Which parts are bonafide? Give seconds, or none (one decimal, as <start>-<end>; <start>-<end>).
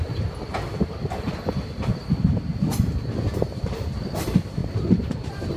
0.0-5.6